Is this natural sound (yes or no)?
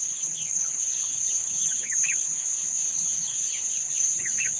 no